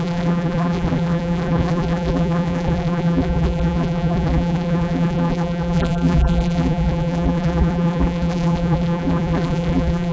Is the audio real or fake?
fake